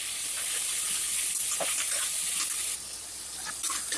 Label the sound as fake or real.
real